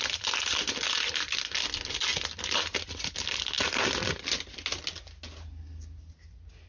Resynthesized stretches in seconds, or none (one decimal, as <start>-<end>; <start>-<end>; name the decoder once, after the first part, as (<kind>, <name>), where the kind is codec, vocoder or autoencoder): none